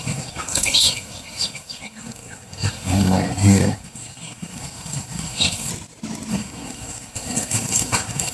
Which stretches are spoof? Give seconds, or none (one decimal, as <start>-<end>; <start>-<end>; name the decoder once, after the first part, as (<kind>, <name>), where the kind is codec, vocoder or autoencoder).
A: 0.0-5.7 (codec, SNAC); 6.3-8.3